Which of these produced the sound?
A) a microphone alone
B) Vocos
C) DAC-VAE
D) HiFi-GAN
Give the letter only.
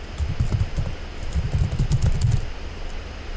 A